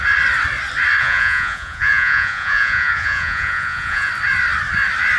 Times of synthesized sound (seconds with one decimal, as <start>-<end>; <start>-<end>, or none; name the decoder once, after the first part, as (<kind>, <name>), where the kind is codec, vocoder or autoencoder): 1.0-4.1 (vocoder, Vocos)